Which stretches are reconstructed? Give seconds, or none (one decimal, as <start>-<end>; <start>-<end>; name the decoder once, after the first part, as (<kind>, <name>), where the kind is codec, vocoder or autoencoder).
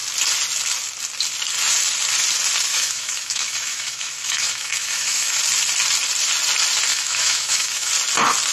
2.7-5.4 (autoencoder, DAC-VAE); 6.9-7.9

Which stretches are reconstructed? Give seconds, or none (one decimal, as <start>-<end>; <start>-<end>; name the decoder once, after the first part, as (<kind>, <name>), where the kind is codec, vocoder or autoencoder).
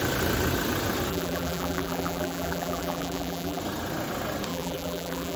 1.1-3.6 (vocoder, BigVGAN v2); 4.5-5.4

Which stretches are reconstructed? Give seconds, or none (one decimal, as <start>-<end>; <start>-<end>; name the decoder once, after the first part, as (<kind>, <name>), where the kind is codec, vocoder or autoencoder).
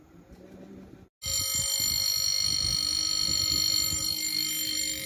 none